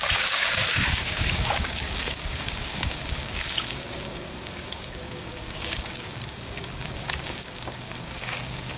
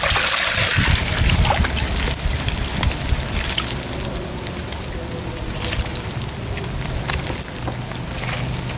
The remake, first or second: first